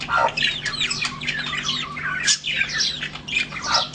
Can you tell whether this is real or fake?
real